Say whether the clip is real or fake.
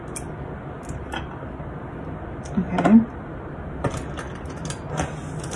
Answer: real